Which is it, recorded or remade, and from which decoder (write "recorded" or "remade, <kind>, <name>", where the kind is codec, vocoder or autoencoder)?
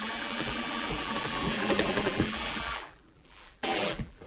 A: remade, vocoder, BigVGAN v2